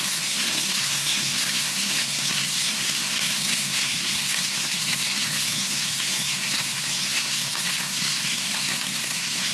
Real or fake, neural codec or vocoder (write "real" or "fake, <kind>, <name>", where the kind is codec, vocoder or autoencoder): fake, codec, SNAC